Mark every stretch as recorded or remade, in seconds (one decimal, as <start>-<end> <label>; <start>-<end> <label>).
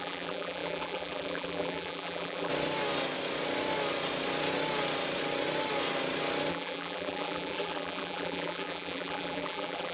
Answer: 0.0-2.5 remade; 2.5-6.5 recorded; 6.5-9.9 remade